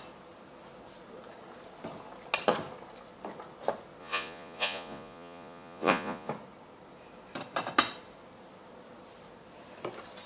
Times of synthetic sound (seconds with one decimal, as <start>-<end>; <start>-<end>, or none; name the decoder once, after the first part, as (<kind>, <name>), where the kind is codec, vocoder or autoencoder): 4.0-6.3 (vocoder, Vocos)